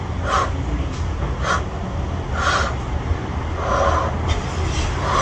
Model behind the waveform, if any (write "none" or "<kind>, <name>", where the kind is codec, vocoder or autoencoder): none